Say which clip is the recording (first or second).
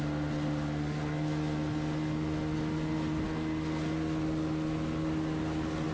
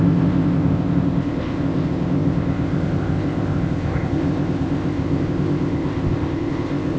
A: first